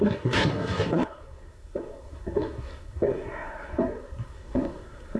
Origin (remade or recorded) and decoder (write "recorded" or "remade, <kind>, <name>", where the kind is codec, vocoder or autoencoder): remade, codec, SNAC